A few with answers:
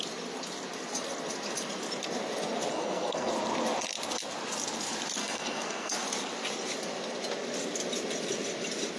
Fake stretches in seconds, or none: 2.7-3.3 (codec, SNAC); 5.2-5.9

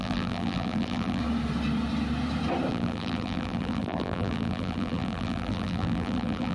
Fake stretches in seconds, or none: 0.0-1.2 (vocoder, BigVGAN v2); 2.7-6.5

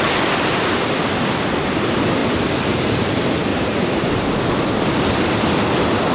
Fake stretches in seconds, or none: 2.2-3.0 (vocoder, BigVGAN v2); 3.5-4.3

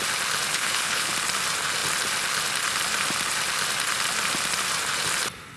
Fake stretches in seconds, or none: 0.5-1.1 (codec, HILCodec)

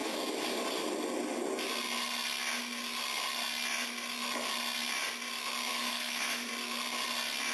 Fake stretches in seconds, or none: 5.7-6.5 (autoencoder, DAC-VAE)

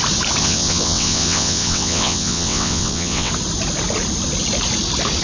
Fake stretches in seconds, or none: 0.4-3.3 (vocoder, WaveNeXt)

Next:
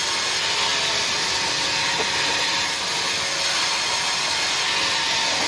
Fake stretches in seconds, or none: none

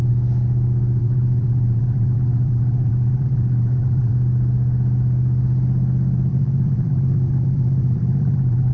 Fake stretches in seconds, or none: 1.0-4.1 (vocoder, BigVGAN v2); 6.3-8.7